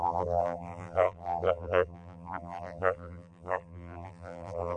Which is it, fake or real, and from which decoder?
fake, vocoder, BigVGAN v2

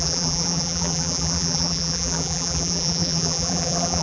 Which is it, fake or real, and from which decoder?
fake, vocoder, BigVGAN v2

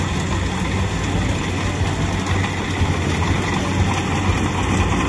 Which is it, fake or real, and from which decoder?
real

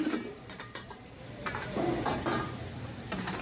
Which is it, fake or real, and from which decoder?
fake, vocoder, BigVGAN v2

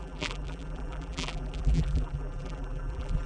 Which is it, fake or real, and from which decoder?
fake, vocoder, BigVGAN v2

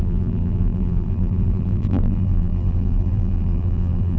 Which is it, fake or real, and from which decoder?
fake, vocoder, BigVGAN v2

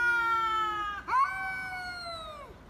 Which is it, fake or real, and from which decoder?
real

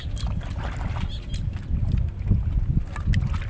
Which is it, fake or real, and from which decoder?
real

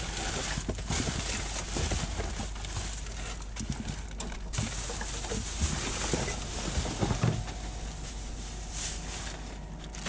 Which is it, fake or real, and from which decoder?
real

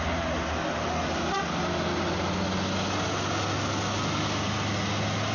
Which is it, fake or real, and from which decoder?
real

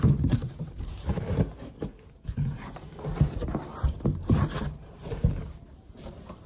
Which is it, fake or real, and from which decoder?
fake, vocoder, BigVGAN v2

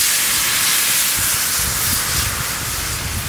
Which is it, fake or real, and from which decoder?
real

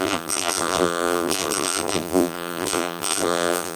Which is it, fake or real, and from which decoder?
fake, vocoder, BigVGAN v2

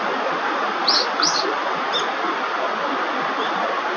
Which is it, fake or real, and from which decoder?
real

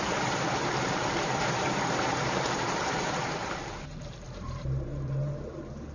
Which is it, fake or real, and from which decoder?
fake, vocoder, BigVGAN v2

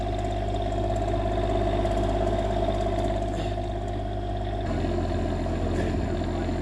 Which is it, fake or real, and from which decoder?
real